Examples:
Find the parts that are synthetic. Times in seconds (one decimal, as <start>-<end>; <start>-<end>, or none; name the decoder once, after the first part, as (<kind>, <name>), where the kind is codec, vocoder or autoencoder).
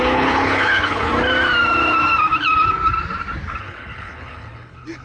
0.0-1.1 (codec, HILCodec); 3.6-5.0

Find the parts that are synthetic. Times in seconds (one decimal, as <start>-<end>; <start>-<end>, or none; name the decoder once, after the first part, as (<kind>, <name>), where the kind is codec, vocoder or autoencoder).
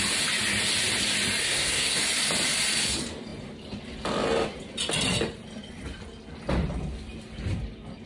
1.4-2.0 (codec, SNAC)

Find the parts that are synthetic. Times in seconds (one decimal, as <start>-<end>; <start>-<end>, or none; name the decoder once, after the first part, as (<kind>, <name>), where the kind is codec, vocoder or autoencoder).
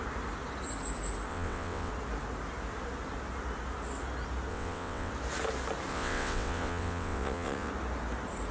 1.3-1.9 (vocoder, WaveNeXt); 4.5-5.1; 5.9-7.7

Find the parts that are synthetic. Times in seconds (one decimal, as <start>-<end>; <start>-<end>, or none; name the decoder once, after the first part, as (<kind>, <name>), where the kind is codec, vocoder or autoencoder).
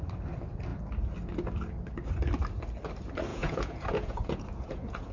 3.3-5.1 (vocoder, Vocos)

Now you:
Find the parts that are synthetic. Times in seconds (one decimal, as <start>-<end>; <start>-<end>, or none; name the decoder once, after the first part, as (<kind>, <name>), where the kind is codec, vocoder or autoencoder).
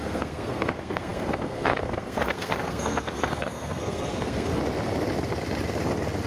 0.0-4.6 (codec, SNAC)